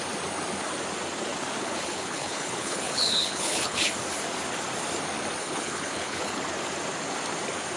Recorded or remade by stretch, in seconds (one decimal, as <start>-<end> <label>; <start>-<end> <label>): 0.0-1.6 recorded; 1.6-3.9 remade; 3.9-5.4 recorded; 5.4-6.4 remade; 6.4-7.8 recorded